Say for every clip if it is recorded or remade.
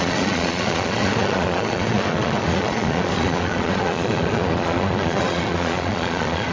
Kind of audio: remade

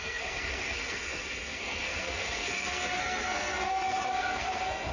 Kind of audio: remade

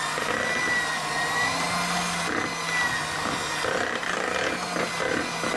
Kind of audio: recorded